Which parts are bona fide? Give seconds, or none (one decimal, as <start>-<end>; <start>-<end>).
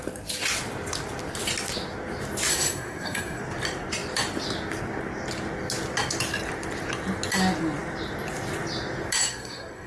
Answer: 0.0-2.5; 3.4-9.2